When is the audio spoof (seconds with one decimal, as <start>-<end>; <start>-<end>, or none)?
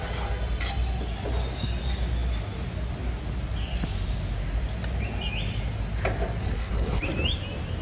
6.4-7.0